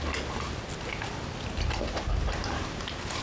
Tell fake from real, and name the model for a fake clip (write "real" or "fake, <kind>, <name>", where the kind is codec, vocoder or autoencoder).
real